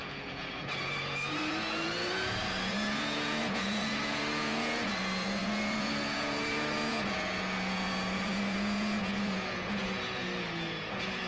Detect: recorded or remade remade